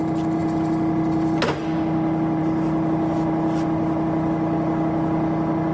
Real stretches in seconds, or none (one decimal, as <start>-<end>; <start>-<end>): 0.0-5.7